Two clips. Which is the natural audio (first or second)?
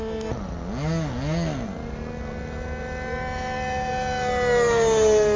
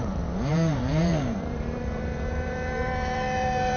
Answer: first